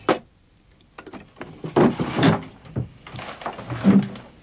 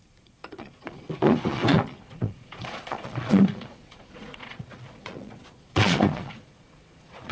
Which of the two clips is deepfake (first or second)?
second